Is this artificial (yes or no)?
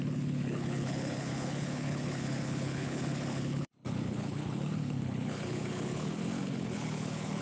yes